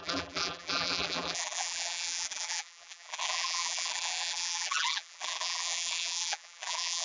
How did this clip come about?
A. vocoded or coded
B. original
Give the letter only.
A